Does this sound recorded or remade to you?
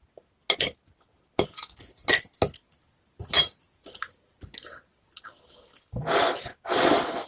recorded